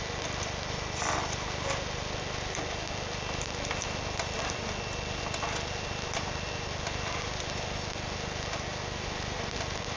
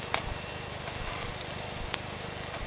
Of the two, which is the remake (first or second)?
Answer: second